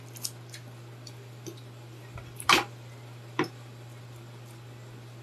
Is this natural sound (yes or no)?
yes